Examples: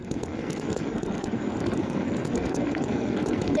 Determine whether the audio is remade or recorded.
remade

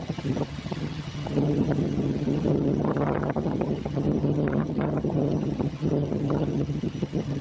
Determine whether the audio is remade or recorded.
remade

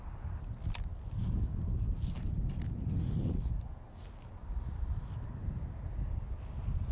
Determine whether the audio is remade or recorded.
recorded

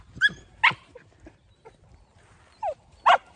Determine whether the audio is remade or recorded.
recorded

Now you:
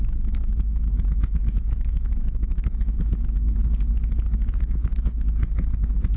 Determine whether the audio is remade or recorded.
remade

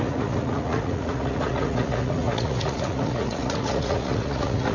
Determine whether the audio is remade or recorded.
remade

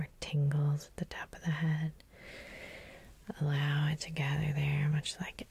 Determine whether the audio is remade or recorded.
recorded